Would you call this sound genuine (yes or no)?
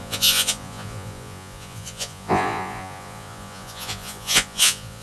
no